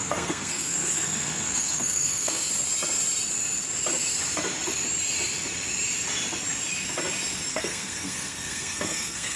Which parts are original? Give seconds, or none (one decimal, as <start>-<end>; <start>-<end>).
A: 2.5-7.5